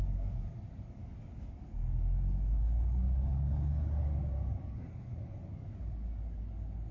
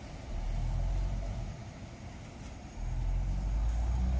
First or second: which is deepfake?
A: first